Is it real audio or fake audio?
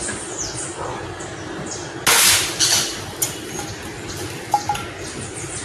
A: real